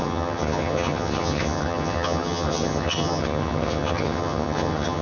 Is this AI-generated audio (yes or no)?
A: yes